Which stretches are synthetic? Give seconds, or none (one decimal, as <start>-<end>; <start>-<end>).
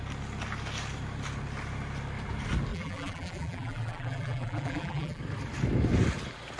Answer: 2.7-5.2